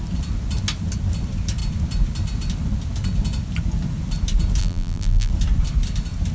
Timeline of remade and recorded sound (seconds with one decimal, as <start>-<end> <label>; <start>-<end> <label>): 0.0-4.6 recorded; 4.6-5.3 remade; 5.3-6.3 recorded